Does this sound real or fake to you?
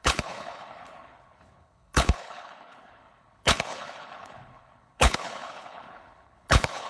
fake